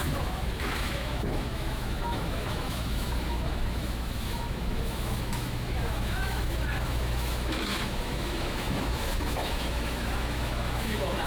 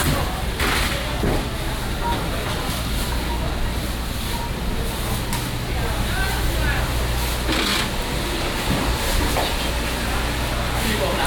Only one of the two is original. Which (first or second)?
second